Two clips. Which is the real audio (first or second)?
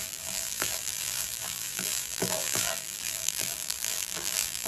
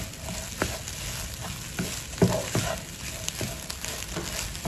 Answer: second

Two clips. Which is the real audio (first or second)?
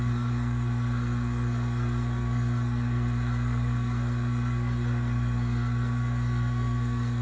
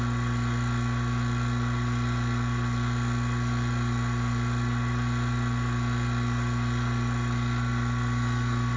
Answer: second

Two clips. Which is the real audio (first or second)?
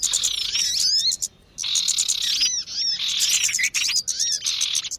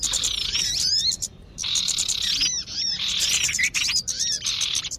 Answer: first